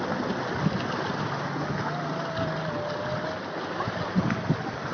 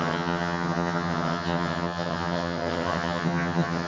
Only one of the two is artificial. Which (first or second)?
second